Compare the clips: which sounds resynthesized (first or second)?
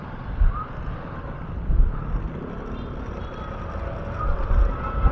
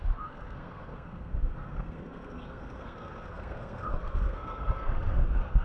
second